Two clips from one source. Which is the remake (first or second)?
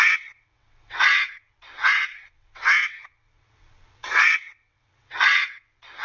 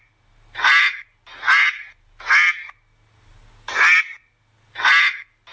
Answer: first